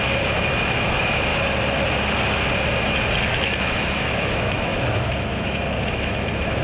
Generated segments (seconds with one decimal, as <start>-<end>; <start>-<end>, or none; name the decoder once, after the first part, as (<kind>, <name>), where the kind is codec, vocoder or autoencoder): 0.0-1.3 (autoencoder, DAC-VAE); 3.3-6.6